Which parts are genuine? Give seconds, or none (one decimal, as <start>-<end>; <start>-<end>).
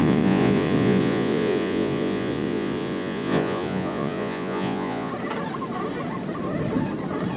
5.1-7.4